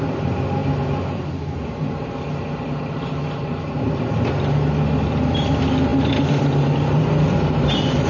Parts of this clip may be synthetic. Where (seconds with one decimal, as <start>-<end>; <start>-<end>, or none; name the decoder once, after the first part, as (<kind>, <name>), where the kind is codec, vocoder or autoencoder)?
none